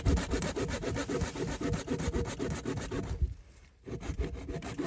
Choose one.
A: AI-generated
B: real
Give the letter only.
B